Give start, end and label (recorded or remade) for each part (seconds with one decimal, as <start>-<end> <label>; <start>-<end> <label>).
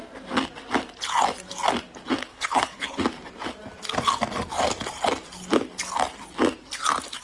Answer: 0.0-2.3 recorded; 2.3-3.0 remade; 3.0-7.2 recorded